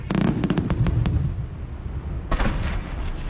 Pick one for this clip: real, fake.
real